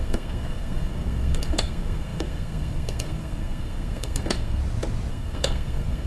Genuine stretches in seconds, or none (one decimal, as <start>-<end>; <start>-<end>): 4.6-5.1